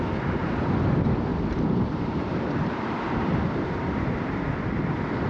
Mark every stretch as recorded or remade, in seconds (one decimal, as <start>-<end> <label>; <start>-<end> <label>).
0.0-1.3 recorded; 1.3-4.5 remade; 4.5-5.3 recorded